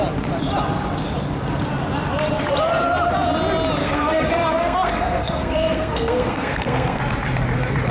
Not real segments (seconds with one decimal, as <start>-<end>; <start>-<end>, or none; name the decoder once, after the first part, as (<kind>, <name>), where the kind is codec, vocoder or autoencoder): 3.8-7.0 (codec, SNAC)